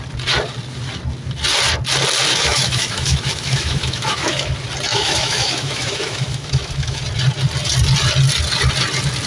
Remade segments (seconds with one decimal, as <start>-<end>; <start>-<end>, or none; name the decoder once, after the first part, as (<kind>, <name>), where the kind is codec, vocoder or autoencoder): 2.3-4.5 (autoencoder, DAC-VAE); 4.9-7.0